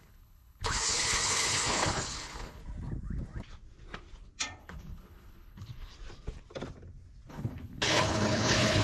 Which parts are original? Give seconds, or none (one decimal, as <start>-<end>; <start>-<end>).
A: 2.6-4.6; 5.9-7.3